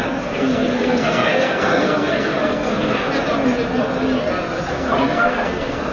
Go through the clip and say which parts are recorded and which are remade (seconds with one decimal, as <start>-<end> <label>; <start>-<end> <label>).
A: 0.0-3.1 remade; 3.1-4.7 recorded; 4.7-5.9 remade